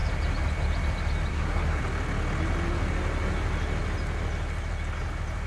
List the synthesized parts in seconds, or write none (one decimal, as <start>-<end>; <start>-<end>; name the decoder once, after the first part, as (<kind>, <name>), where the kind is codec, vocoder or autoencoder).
1.3-1.8 (codec, SNAC)